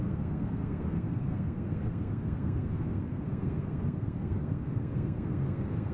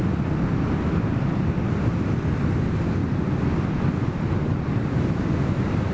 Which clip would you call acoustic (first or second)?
second